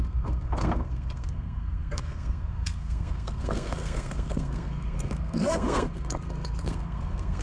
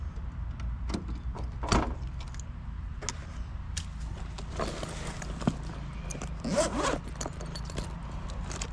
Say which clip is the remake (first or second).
first